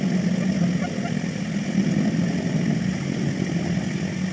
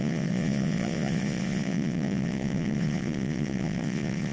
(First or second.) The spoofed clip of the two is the second